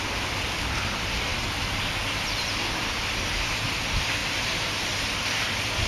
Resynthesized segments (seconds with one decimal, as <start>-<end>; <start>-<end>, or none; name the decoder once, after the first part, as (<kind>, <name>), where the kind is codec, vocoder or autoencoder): 0.0-5.9 (vocoder, BigVGAN v2)